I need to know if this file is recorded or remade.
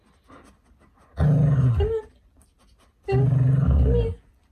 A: recorded